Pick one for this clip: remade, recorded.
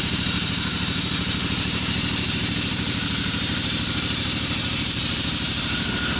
remade